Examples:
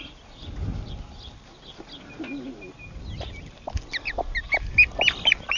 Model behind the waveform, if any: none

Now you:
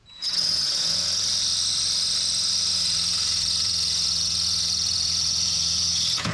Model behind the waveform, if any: vocoder, Vocos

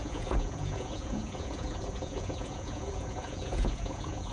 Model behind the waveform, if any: vocoder, Vocos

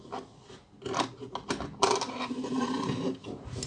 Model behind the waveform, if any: none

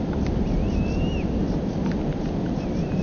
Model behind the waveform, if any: vocoder, BigVGAN v2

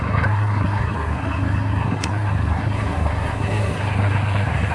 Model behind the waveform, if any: codec, SNAC